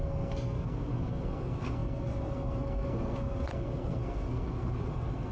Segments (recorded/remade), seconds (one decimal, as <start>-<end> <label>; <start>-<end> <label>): 0.0-5.3 remade